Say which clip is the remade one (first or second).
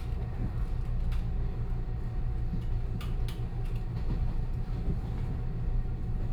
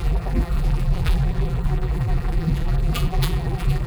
second